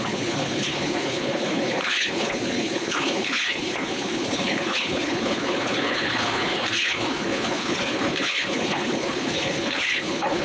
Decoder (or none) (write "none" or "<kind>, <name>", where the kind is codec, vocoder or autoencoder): codec, HILCodec